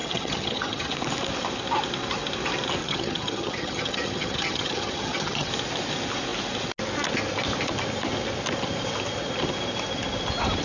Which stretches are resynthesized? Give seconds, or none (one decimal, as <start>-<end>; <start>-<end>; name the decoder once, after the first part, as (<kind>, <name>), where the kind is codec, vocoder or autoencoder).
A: 0.0-0.9 (vocoder, HiFi-GAN); 2.8-5.5